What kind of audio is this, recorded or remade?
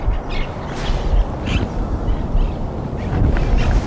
recorded